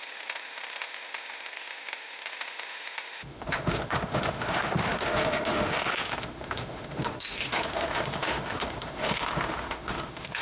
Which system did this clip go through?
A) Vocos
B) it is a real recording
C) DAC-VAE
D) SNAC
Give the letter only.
C